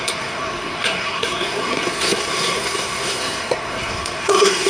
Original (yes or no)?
no